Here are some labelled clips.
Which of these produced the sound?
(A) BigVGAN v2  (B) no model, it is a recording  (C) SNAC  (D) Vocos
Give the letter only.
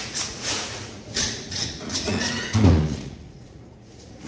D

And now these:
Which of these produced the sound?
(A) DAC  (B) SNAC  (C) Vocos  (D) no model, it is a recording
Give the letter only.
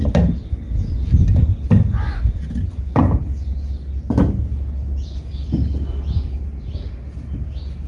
D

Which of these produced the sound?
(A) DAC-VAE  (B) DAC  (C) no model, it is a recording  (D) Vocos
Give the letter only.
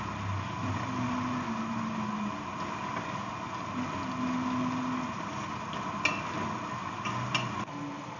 C